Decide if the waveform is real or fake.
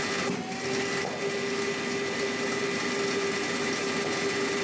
real